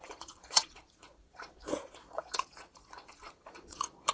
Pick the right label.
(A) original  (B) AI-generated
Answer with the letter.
B